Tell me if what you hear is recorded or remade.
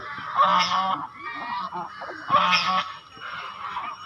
recorded